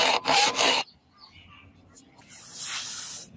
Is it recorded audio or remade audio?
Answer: recorded